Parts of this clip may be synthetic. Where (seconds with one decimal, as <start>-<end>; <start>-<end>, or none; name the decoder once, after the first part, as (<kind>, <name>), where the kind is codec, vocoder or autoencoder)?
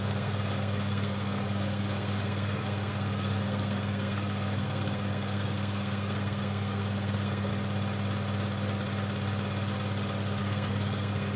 0.0-7.5 (codec, SNAC); 10.4-11.4